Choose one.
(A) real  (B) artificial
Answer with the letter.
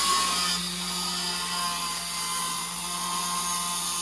A